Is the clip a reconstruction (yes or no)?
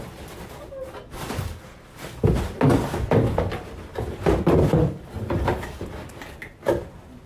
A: no